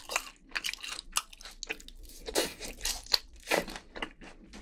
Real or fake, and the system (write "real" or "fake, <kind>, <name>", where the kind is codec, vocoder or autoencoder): real